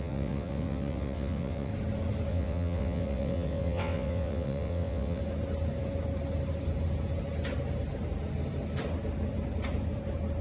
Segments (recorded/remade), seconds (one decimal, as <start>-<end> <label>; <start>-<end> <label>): 0.0-1.7 remade; 1.7-2.3 recorded; 2.3-5.2 remade; 5.2-10.4 recorded

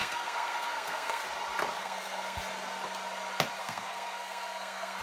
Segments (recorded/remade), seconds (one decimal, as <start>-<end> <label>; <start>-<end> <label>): 0.0-1.2 remade; 1.2-1.8 recorded; 1.8-2.4 remade; 2.4-3.6 recorded; 3.6-5.0 remade

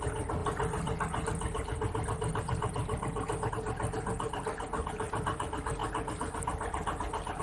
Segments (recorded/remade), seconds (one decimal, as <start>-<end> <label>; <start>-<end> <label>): 0.0-7.4 recorded